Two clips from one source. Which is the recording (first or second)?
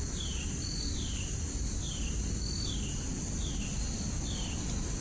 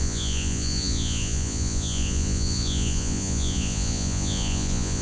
first